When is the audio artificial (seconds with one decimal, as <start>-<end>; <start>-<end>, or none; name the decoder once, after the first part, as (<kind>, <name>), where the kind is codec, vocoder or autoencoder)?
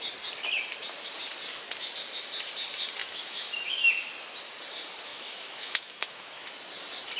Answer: 3.0-3.9 (autoencoder, DAC-VAE); 5.1-6.5